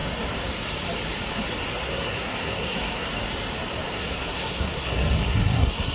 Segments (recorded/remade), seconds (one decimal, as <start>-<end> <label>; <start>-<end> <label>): 0.0-1.7 recorded; 1.7-3.1 remade; 3.1-3.9 recorded; 3.9-5.9 remade